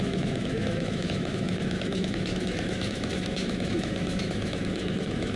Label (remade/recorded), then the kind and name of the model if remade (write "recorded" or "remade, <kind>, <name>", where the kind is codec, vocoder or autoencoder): remade, autoencoder, DAC-VAE